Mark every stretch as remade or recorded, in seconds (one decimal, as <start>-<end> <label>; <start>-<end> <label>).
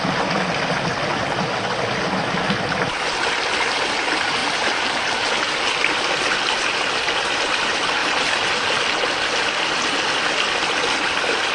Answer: 0.0-4.4 recorded; 4.4-5.3 remade; 5.3-8.0 recorded; 8.0-9.0 remade; 9.0-11.5 recorded